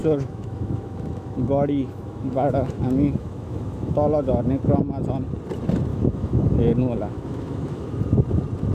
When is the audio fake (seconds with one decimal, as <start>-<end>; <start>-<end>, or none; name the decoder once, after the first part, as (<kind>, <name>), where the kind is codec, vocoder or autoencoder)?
0.0-4.8 (autoencoder, DAC-VAE); 5.9-8.0